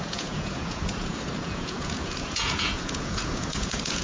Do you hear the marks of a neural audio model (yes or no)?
yes